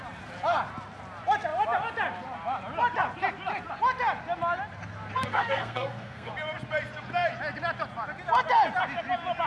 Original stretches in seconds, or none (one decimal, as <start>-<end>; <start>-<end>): 0.0-5.3; 6.3-9.5